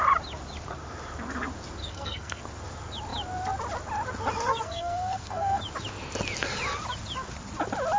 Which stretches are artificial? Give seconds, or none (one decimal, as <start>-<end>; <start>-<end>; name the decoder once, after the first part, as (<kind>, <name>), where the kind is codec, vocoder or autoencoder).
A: 1.8-2.4 (codec, SNAC); 4.5-5.6